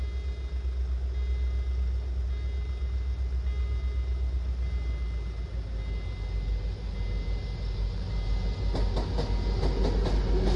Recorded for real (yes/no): yes